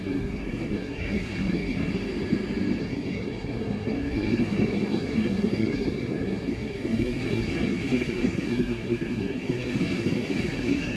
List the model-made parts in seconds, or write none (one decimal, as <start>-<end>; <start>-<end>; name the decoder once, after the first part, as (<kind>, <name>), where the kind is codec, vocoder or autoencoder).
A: 0.0-1.9 (codec, SNAC); 2.8-11.0